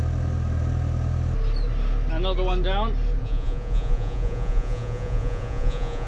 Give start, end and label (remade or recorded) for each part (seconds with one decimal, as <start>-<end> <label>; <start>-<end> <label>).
0.0-3.2 recorded; 3.2-6.1 remade